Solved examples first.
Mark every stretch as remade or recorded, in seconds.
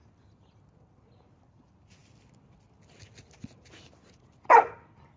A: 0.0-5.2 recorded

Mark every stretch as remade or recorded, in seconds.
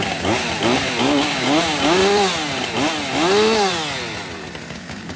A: 0.0-0.4 remade; 0.4-1.0 recorded; 1.0-2.0 remade; 2.0-4.7 recorded; 4.7-5.2 remade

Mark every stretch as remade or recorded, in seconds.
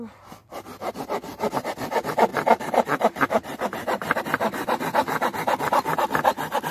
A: 0.0-2.3 recorded; 2.3-4.2 remade; 4.2-6.7 recorded